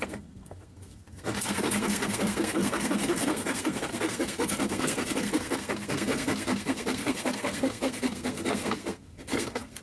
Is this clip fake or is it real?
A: fake